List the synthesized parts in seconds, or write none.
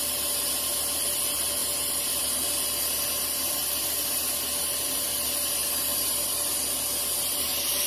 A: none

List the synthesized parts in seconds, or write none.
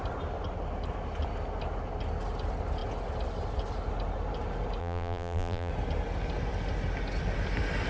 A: 4.8-5.7 (vocoder, BigVGAN v2)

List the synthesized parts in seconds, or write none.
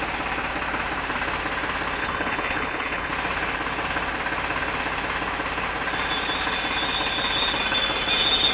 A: 2.0-3.1 (codec, HILCodec)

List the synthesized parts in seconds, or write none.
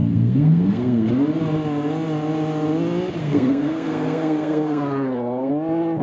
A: 0.0-1.1 (codec, SNAC); 3.2-5.5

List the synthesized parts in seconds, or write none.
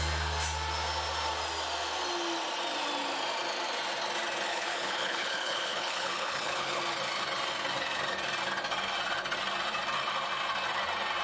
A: 4.5-6.8 (codec, HILCodec)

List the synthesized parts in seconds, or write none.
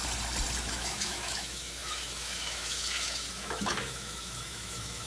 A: 0.6-5.1 (autoencoder, DAC-VAE)